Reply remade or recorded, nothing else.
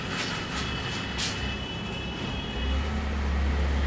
recorded